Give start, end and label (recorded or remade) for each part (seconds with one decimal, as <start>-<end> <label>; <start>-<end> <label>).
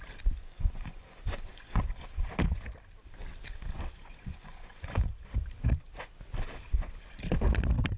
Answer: 0.0-0.4 recorded; 0.4-2.3 remade; 2.3-4.1 recorded; 4.1-5.1 remade; 5.1-8.0 recorded